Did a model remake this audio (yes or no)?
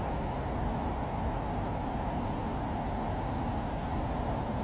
no